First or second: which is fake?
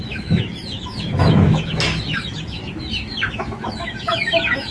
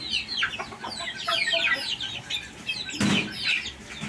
first